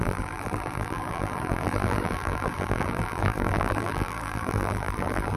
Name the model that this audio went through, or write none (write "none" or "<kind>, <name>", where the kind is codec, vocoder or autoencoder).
vocoder, BigVGAN v2